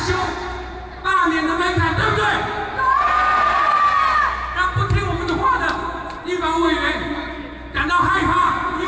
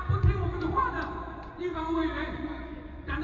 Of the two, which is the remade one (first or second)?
second